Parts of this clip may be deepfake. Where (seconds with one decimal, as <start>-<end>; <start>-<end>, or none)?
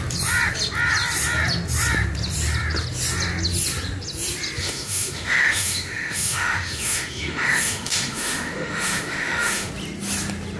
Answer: 4.6-9.7